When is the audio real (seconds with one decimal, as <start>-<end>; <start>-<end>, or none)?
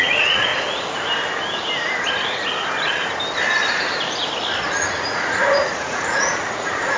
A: 0.5-4.7